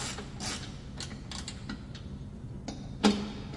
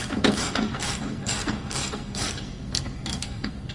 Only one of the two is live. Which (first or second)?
first